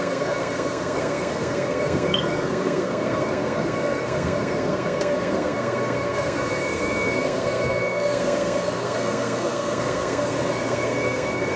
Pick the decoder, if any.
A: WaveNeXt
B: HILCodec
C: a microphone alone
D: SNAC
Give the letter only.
D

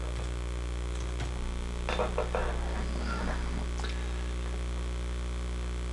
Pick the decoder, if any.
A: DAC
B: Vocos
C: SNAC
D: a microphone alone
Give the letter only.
D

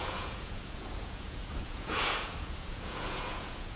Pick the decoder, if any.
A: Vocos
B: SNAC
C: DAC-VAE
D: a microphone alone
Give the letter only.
A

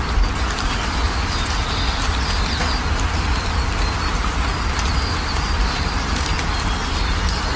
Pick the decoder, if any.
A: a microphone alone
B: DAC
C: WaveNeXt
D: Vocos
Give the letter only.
A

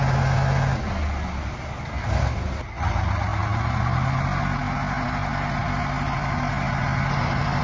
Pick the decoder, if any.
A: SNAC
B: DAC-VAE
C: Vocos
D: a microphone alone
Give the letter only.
D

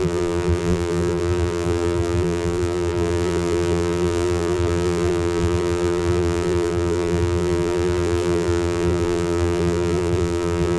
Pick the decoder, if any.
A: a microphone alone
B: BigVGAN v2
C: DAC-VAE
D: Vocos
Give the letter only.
B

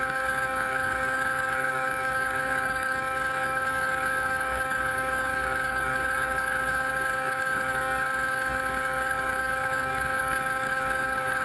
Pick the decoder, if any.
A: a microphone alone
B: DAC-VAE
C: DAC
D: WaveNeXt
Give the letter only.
C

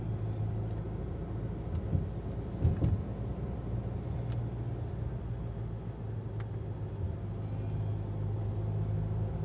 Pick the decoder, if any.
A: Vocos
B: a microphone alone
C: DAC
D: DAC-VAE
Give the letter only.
B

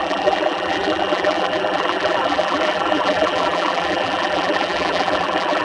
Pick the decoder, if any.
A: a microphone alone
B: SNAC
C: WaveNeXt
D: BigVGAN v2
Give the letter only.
D